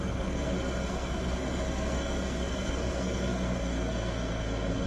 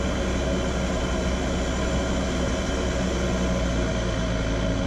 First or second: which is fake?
first